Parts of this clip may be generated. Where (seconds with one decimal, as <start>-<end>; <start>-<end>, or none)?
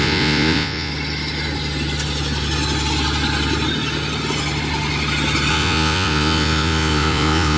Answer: 0.0-0.9; 5.5-7.6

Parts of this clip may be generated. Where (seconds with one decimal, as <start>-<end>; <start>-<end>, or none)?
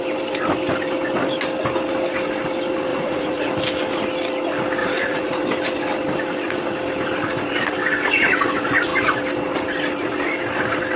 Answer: 2.9-3.5; 4.8-5.4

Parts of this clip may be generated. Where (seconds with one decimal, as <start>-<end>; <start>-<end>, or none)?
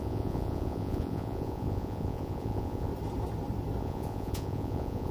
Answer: 0.0-2.9; 3.8-5.1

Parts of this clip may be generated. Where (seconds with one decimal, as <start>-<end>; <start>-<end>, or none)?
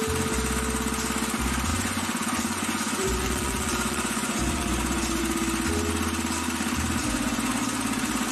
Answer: 1.7-5.2; 7.0-7.5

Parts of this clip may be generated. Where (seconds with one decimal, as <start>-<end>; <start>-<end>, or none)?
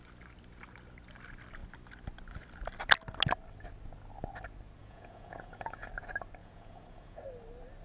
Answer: 4.8-5.9; 6.4-7.2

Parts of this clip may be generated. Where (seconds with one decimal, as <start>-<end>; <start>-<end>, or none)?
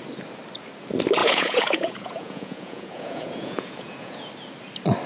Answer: 1.2-4.3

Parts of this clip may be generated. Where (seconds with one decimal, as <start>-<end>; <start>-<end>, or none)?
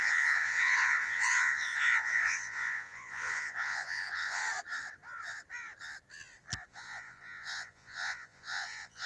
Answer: 0.0-4.4; 6.7-9.1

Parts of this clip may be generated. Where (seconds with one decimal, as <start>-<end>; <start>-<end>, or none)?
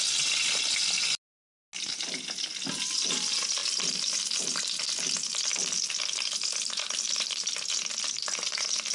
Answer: none